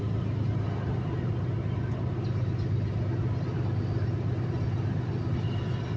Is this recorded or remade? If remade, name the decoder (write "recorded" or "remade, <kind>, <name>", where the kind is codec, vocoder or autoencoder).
recorded